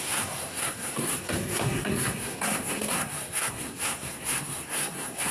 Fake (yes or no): yes